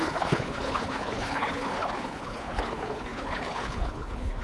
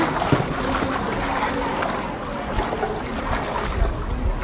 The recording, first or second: second